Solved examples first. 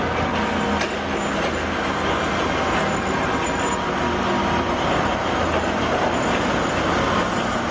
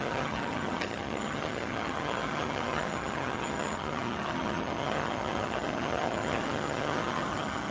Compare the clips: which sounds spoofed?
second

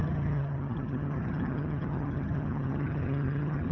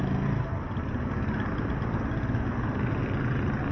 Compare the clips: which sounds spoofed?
first